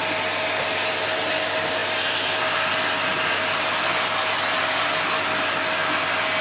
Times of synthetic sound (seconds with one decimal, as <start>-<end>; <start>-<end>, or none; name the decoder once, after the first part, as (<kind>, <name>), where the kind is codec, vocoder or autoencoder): none